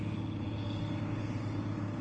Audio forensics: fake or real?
real